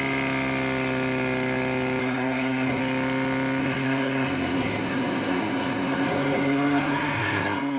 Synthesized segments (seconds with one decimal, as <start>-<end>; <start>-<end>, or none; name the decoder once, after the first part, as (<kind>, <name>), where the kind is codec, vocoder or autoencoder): 2.0-2.8 (codec, SNAC); 3.6-7.8